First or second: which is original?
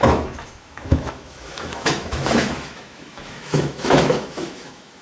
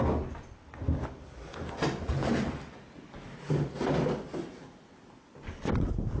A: second